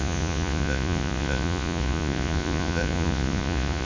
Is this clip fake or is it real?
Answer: fake